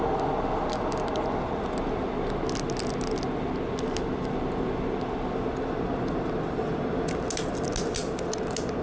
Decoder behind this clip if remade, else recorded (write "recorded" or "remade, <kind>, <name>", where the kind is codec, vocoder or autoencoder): recorded